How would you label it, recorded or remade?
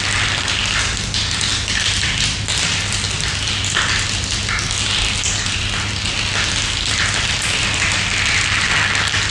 recorded